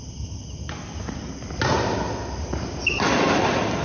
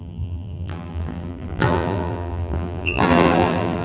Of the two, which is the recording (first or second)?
first